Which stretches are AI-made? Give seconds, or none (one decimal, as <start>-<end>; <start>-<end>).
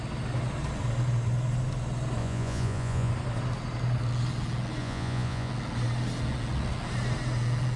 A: 2.2-3.1; 4.8-5.5